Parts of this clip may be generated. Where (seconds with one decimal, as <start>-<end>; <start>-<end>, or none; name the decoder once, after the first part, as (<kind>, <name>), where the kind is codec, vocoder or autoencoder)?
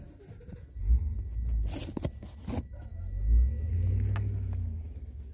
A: 2.9-3.7 (autoencoder, DAC-VAE)